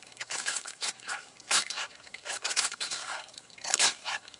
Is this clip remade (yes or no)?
yes